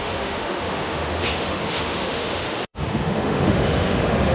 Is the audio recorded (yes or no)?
no